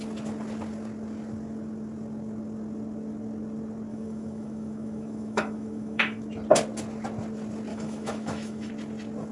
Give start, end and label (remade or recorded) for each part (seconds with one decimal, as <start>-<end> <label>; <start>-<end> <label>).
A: 0.0-3.9 recorded; 3.9-6.2 remade; 6.2-7.7 recorded; 7.7-8.7 remade; 8.7-9.3 recorded